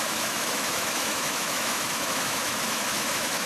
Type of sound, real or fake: fake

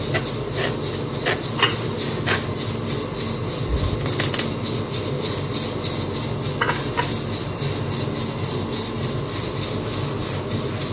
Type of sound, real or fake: real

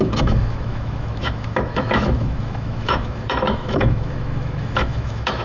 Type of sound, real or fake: fake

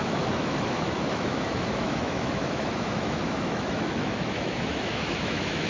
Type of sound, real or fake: fake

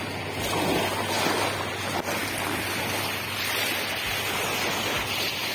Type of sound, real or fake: real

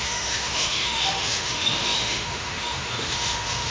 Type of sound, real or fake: fake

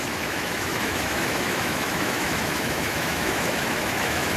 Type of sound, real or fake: fake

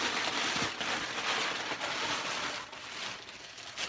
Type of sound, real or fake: real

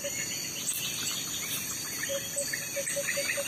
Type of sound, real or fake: real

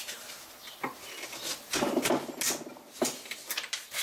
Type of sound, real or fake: real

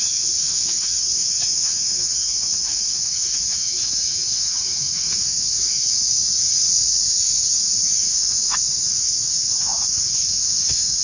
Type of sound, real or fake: fake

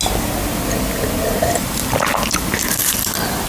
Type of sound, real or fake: real